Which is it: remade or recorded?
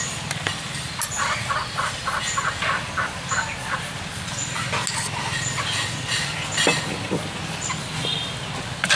recorded